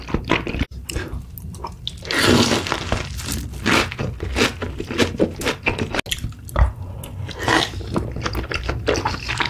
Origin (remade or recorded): recorded